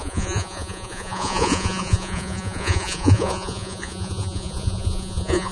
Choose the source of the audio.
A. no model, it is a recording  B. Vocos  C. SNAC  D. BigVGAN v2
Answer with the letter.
B